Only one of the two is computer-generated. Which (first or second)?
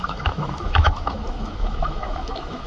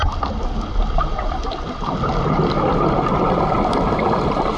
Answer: first